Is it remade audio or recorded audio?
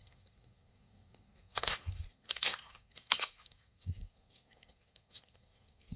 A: remade